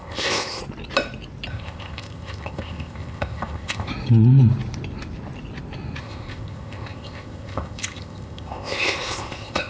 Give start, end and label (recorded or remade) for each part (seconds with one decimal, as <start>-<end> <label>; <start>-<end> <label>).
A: 0.0-0.6 remade; 0.6-1.5 recorded; 1.5-3.9 remade; 3.9-6.0 recorded; 6.0-9.7 remade